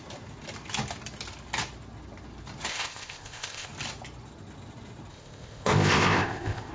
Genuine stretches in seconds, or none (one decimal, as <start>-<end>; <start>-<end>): 0.0-2.7; 3.7-5.1